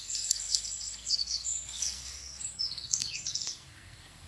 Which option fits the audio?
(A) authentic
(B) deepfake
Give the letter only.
B